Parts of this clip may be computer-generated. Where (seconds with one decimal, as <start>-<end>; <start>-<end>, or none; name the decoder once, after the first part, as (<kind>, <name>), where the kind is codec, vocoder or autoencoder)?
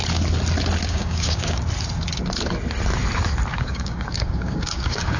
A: 0.8-1.6 (codec, DAC); 3.5-5.2